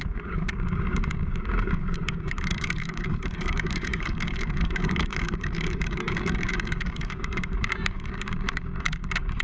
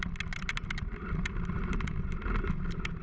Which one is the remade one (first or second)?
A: first